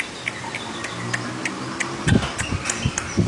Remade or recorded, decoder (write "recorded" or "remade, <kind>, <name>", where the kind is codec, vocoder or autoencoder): recorded